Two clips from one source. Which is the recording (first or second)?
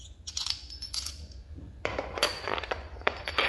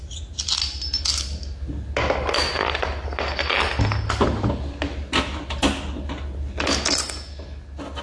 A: second